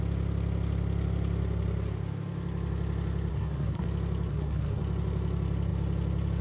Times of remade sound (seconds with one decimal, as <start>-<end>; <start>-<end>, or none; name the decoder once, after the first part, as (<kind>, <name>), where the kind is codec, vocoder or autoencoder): 3.3-3.8 (codec, SNAC); 4.3-4.8